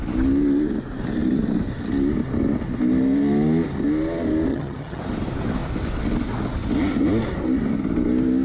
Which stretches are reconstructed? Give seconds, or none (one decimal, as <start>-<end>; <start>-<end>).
4.5-5.0